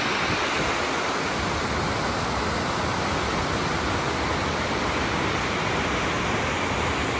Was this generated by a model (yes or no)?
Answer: no